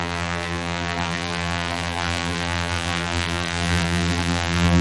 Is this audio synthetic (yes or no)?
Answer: yes